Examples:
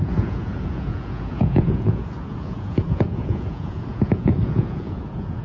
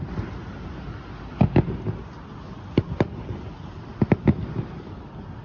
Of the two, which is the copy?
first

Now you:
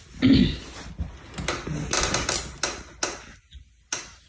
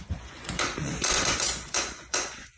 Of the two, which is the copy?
second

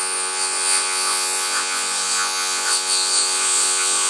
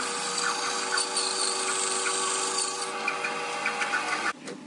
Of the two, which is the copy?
first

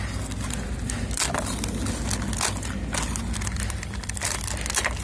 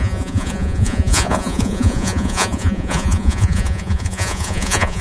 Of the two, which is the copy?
second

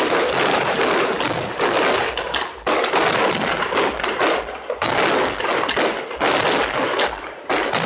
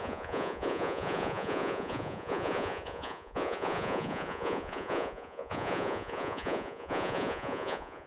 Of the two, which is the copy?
second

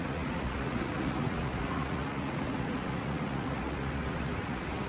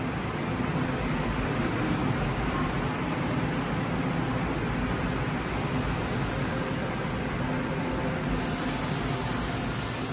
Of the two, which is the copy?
first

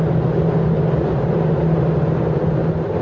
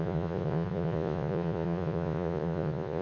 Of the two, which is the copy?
second